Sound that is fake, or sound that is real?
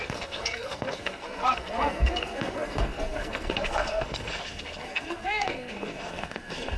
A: fake